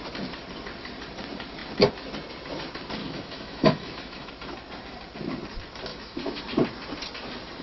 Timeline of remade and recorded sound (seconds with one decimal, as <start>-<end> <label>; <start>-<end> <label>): 0.0-3.0 recorded; 3.0-4.3 remade; 4.3-5.9 recorded; 5.9-6.4 remade; 6.4-7.6 recorded